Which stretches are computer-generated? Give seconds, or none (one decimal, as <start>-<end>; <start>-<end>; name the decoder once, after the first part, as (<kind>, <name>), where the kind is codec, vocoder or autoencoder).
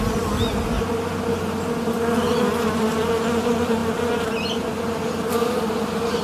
none